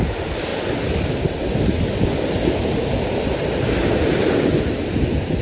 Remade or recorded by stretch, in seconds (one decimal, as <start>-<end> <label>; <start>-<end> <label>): 0.0-5.4 recorded